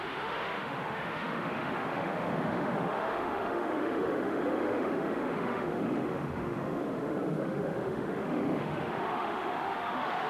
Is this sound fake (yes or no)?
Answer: yes